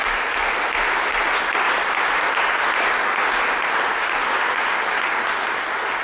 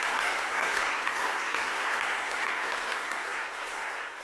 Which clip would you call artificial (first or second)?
second